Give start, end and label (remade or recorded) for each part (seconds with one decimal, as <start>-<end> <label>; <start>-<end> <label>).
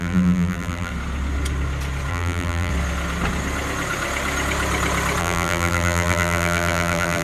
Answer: 0.0-0.9 remade; 0.9-2.1 recorded; 2.1-2.7 remade; 2.7-5.2 recorded; 5.2-7.2 remade